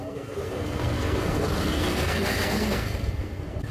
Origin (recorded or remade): remade